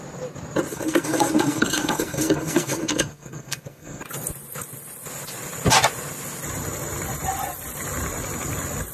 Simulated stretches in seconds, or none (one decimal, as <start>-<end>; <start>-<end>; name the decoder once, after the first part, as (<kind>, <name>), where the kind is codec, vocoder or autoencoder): 0.7-4.0 (codec, SNAC)

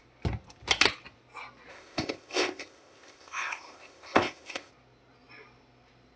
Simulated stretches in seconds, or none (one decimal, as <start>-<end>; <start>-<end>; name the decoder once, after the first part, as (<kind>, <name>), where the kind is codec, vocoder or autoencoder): 1.7-4.7 (codec, ZipCodec)

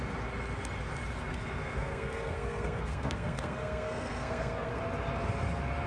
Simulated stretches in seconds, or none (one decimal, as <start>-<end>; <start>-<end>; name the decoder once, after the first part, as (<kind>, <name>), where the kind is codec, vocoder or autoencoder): 1.3-4.8 (codec, SNAC)

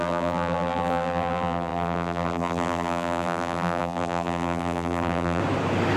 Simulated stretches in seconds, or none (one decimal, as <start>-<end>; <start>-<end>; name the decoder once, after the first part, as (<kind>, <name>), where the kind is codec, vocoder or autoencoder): 0.0-5.4 (vocoder, BigVGAN v2)

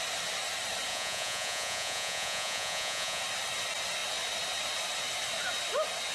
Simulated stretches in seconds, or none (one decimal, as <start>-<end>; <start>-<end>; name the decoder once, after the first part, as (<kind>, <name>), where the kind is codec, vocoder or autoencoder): 0.9-3.2 (vocoder, Vocos)

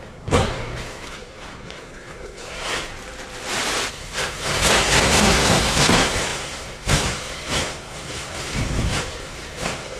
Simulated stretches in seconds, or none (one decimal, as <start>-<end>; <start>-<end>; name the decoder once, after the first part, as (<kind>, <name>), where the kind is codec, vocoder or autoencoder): 0.0-2.9 (codec, SNAC); 3.9-10.0